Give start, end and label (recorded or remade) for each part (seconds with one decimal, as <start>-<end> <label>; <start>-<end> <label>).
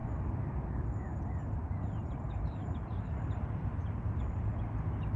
0.0-1.6 recorded; 1.6-4.5 remade; 4.5-5.2 recorded